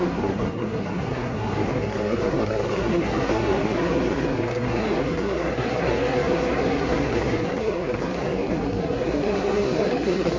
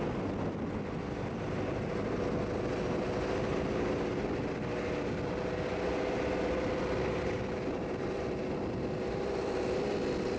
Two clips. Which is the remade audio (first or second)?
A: first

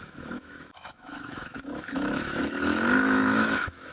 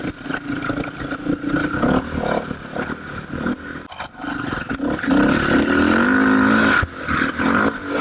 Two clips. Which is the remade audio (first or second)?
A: first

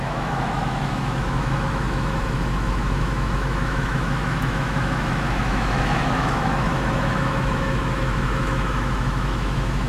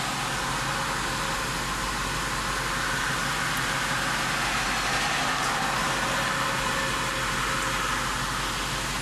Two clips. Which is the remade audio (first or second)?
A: first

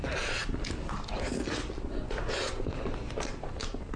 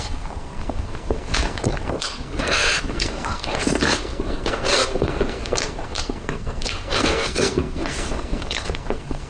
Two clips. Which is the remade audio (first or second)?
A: second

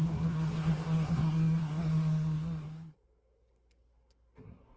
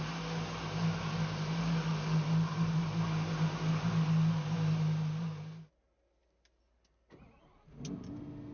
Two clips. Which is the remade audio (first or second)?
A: first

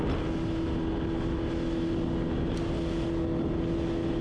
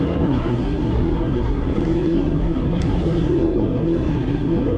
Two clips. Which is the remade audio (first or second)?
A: second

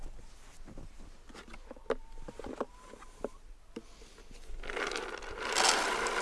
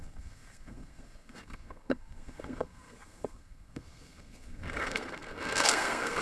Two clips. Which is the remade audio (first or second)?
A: second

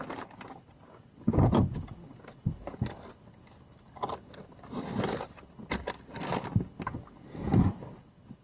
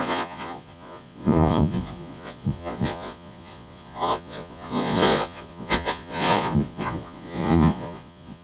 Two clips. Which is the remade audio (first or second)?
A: second